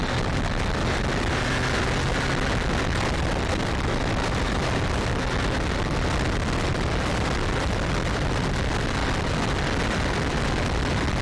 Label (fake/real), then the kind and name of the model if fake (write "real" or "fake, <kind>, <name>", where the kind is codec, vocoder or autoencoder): real